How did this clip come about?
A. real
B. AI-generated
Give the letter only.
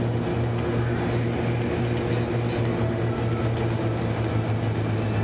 A